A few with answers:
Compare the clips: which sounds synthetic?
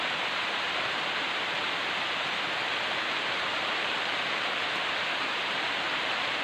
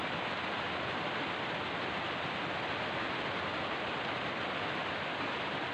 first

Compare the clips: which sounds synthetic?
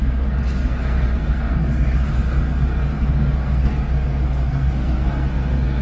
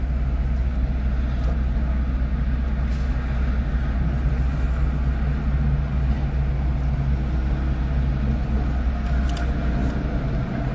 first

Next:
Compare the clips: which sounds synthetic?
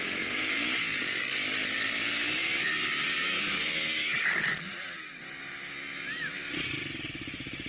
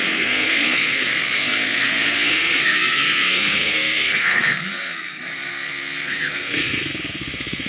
second